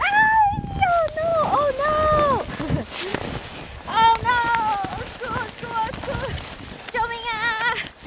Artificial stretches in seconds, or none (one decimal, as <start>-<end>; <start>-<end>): none